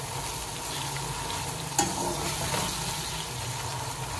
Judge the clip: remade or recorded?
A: recorded